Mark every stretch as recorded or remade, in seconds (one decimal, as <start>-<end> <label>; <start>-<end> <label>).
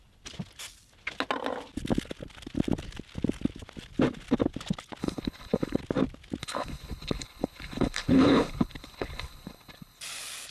0.0-5.0 recorded; 5.0-5.8 remade; 5.8-6.4 recorded; 6.4-10.0 remade; 10.0-10.5 recorded